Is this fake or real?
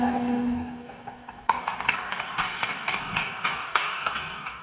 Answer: fake